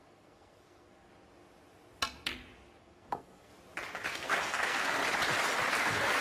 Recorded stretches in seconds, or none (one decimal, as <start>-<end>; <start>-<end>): 1.1-2.8; 3.5-4.1; 5.0-5.7